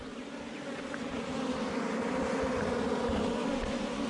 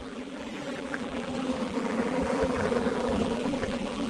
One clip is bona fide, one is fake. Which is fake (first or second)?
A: second